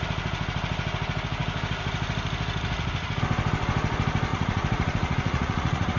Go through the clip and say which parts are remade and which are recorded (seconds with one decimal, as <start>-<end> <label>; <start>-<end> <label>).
0.0-4.3 recorded; 4.3-6.0 remade